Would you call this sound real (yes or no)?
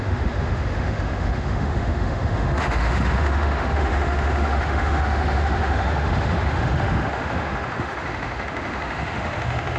no